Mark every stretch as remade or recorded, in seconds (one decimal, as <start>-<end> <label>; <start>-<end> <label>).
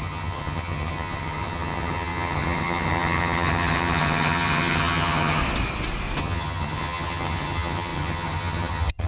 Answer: 0.0-5.4 remade; 5.4-6.2 recorded; 6.2-9.1 remade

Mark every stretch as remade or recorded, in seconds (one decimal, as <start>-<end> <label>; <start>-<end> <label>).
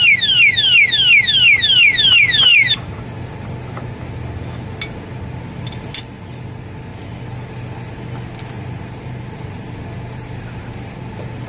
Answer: 0.0-11.5 recorded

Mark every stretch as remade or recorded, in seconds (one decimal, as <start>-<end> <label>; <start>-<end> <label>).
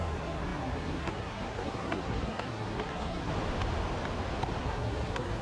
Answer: 0.0-3.3 remade; 3.3-4.6 recorded; 4.6-5.4 remade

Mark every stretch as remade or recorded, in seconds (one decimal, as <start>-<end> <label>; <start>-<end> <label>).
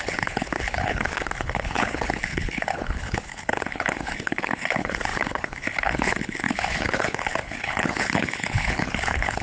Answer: 0.0-9.4 remade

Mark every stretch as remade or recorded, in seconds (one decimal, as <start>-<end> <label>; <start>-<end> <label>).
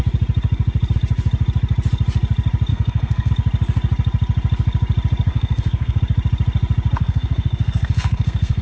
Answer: 0.0-2.7 recorded; 2.7-3.3 remade; 3.3-5.3 recorded; 5.3-6.0 remade; 6.0-7.0 recorded; 7.0-8.6 remade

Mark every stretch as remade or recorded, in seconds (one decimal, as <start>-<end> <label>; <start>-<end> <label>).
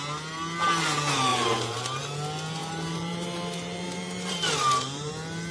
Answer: 0.0-1.3 recorded; 1.3-2.0 remade; 2.0-2.6 recorded; 2.6-5.1 remade; 5.1-5.5 recorded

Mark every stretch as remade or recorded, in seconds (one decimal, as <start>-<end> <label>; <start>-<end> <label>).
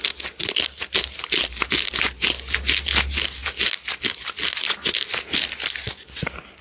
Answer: 0.0-6.6 recorded